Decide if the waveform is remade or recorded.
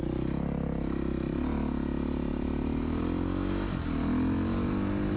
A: recorded